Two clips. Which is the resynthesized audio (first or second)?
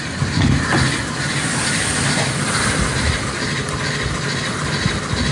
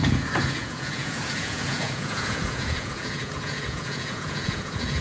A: second